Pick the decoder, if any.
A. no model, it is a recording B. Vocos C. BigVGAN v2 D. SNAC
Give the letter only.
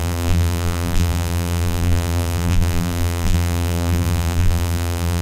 C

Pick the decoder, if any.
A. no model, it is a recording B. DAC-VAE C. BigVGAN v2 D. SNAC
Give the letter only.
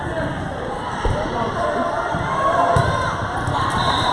C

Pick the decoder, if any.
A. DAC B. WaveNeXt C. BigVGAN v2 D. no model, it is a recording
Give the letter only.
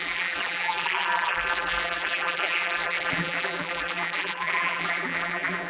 C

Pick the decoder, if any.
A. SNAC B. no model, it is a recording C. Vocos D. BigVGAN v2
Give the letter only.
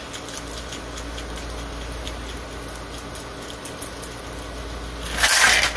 B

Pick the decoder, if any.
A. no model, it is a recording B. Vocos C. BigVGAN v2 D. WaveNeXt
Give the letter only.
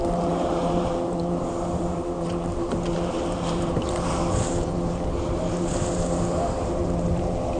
C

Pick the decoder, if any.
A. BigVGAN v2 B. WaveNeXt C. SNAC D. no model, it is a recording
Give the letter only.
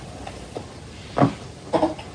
D